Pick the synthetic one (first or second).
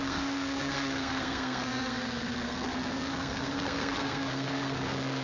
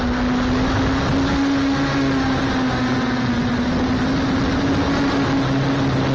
first